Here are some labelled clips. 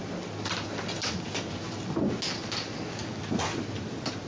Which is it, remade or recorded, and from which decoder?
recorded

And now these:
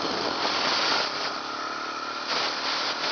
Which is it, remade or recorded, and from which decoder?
recorded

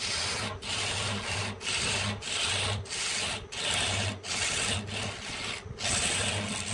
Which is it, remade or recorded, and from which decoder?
recorded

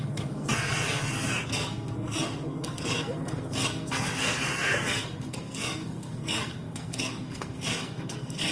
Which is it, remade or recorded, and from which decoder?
remade, codec, SNAC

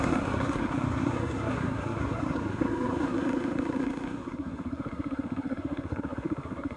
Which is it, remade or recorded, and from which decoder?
remade, codec, SNAC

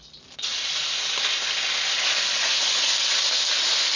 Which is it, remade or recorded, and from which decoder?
recorded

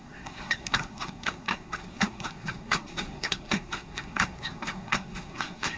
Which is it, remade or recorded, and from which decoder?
remade, codec, SNAC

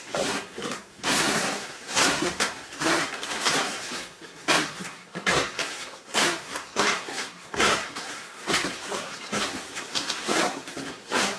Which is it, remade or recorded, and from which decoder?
remade, codec, SNAC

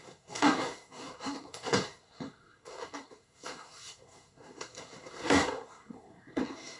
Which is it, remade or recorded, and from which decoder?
remade, codec, SNAC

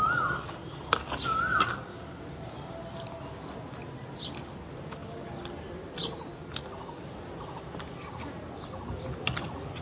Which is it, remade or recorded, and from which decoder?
recorded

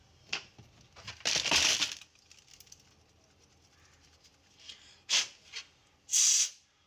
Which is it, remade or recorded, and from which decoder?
recorded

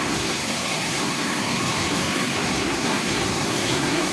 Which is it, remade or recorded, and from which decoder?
remade, codec, SNAC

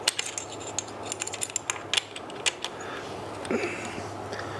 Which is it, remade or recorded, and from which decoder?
recorded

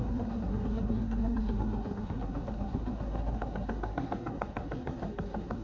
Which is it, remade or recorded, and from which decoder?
remade, codec, SNAC